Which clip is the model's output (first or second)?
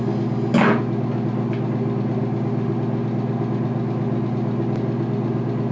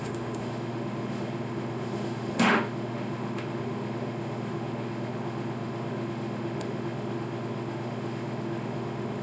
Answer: second